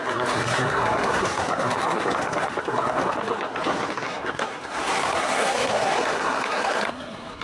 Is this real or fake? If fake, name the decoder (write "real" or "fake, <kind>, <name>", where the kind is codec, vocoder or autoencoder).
fake, codec, SNAC